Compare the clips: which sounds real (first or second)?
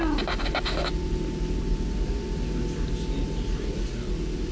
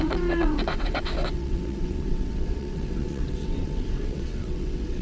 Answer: first